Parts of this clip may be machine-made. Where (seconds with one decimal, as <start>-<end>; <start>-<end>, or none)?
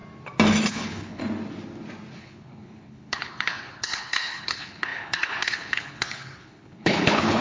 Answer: 0.7-1.2; 2.2-7.4